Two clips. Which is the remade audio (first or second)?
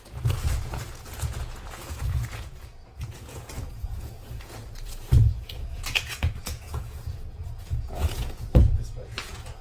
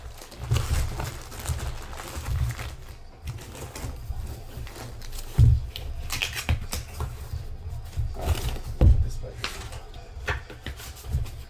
first